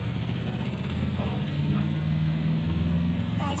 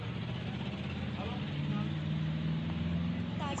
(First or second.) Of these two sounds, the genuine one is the second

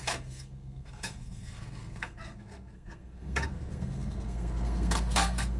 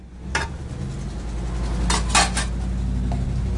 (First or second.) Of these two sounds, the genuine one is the second